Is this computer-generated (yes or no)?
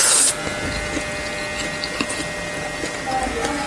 no